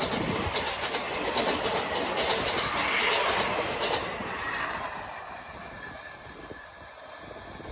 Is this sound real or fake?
real